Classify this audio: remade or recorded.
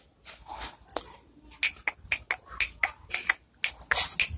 recorded